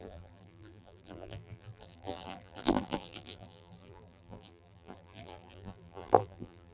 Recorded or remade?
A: remade